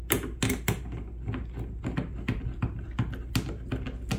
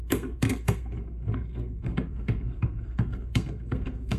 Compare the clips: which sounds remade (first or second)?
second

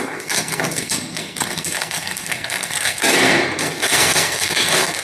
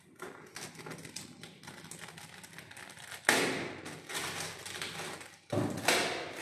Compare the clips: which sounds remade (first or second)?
first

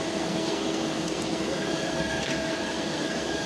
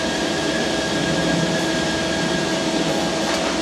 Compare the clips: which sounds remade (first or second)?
first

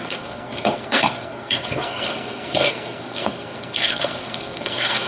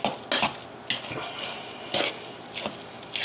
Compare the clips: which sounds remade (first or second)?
first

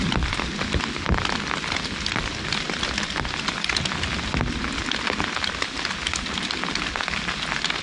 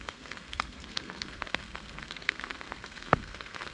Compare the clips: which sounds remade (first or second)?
second